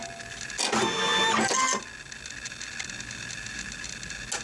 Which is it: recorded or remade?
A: recorded